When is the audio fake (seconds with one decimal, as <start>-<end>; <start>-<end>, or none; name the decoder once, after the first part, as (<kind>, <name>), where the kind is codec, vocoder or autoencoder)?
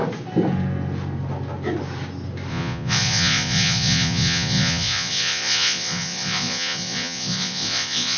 2.5-8.2 (vocoder, Vocos)